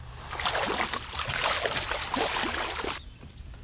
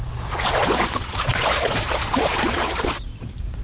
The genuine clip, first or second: first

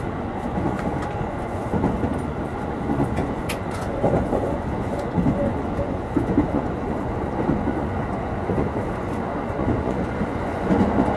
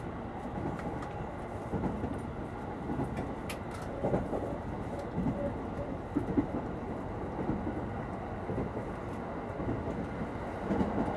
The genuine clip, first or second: second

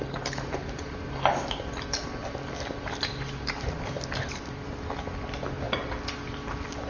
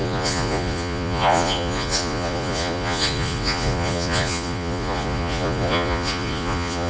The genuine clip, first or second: first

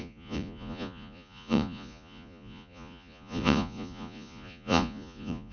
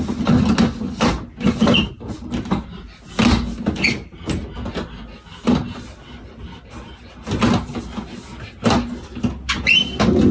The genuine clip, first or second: second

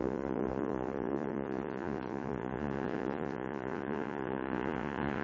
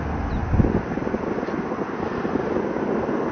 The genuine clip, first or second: second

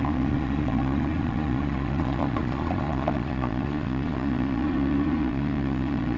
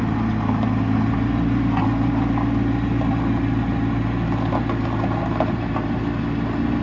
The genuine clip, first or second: second